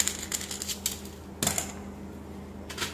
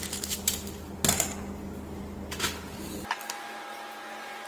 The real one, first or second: first